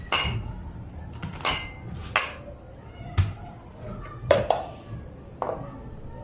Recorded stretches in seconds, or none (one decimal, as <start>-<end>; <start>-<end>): 0.0-3.6; 4.4-6.2